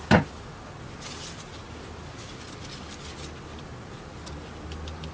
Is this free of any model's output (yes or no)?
yes